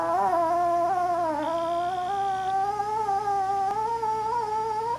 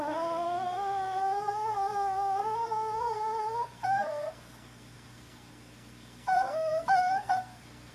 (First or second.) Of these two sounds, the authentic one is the first